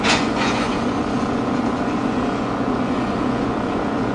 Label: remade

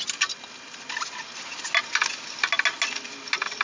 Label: recorded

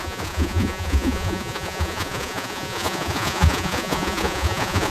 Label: remade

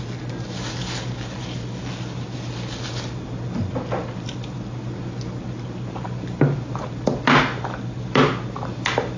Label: recorded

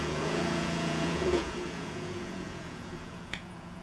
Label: remade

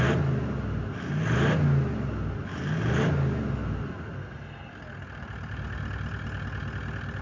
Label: recorded